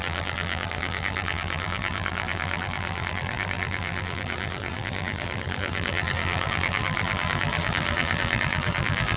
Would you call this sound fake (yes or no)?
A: yes